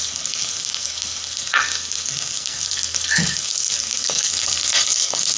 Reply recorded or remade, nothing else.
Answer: remade